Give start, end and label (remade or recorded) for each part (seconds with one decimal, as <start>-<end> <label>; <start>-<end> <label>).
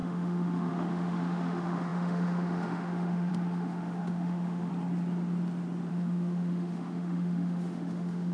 0.0-4.7 remade; 4.7-5.9 recorded; 5.9-8.3 remade